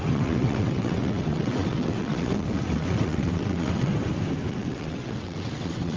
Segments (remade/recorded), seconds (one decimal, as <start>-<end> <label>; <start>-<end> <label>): 0.0-3.9 remade; 3.9-4.5 recorded; 4.5-6.0 remade